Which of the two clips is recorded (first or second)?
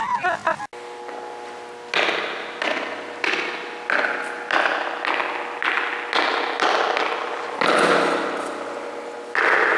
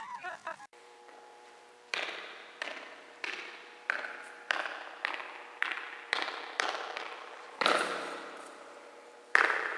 first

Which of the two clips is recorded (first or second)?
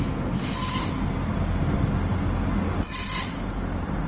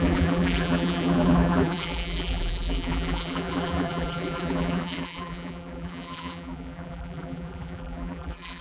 first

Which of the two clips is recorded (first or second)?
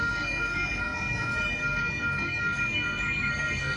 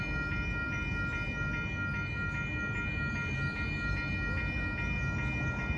second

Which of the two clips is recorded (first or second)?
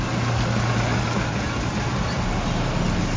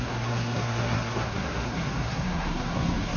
first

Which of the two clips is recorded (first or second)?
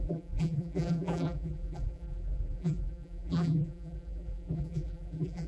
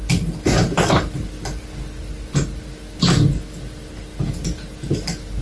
second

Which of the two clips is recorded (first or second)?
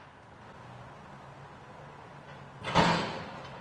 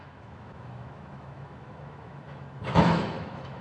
first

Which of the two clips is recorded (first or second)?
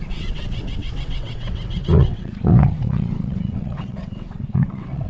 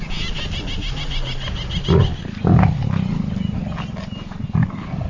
second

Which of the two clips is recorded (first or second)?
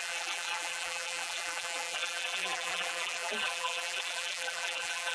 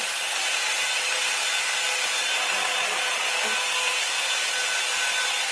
second